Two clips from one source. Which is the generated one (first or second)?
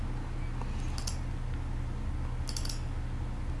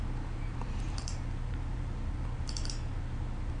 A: second